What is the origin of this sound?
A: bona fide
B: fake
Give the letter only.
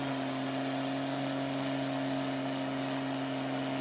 A